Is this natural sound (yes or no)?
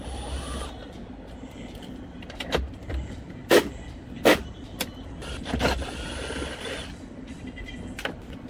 yes